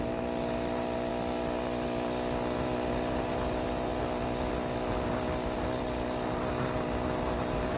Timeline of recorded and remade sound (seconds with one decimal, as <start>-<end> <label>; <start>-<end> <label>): 0.0-7.8 recorded